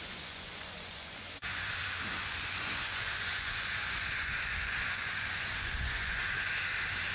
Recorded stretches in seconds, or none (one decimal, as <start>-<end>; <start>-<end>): 1.7-2.2; 6.5-7.1